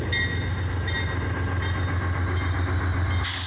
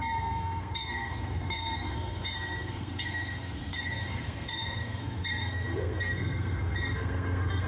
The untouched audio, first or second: first